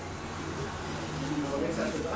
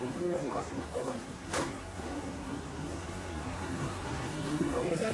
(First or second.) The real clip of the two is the first